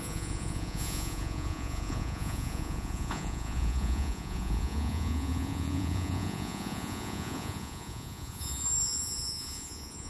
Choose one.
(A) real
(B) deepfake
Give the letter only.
B